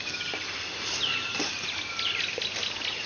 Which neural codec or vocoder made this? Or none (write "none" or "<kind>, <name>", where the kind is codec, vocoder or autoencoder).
none